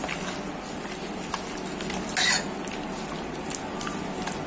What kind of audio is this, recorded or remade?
recorded